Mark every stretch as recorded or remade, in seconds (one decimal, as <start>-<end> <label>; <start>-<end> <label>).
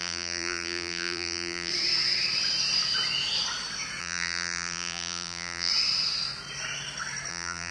0.0-1.7 remade; 1.7-4.0 recorded; 4.0-5.7 remade; 5.7-7.3 recorded; 7.3-7.7 remade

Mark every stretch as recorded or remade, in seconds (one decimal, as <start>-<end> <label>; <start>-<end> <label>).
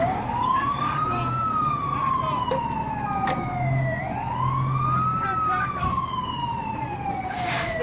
0.0-1.9 remade; 1.9-5.8 recorded; 5.8-6.4 remade; 6.4-7.1 recorded; 7.1-7.8 remade